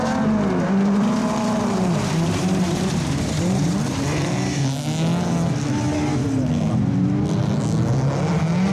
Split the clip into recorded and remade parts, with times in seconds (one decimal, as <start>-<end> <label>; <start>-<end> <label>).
0.0-1.2 recorded; 1.2-3.8 remade; 3.8-8.7 recorded